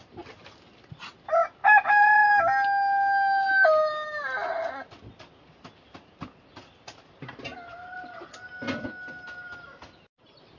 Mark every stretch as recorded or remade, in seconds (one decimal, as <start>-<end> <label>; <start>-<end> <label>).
0.0-10.6 recorded